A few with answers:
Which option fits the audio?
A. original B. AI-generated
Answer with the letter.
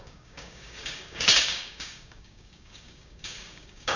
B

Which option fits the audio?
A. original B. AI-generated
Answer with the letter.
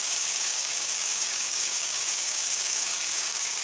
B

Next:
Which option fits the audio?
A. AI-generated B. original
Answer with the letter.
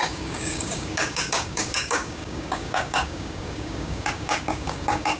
A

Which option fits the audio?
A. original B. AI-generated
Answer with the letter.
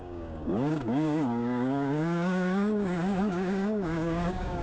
B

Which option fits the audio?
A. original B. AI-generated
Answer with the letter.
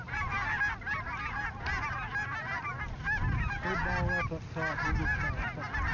A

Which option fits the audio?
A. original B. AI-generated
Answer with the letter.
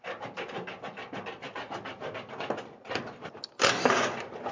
A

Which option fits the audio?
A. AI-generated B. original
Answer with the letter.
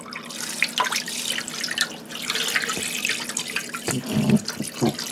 B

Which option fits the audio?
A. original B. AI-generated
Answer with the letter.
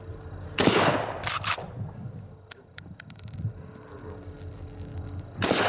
A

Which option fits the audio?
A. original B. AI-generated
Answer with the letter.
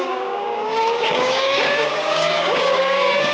B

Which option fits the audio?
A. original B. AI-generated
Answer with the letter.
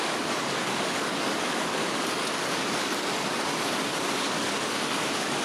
B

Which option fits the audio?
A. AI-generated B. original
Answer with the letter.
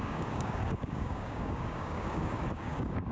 A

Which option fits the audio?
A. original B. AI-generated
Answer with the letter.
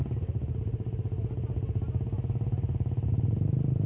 A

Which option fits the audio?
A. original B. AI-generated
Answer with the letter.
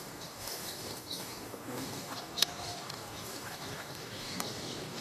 B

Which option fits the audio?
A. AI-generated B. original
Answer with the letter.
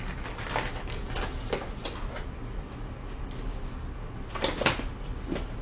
B